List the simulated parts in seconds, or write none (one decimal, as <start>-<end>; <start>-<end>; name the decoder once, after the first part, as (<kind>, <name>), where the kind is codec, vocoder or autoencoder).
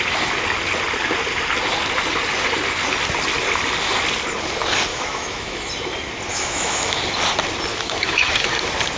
4.9-5.7 (autoencoder, DAC-VAE); 6.3-7.0; 7.7-8.5